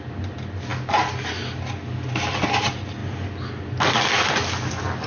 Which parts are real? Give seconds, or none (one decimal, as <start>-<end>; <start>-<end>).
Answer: 0.0-5.1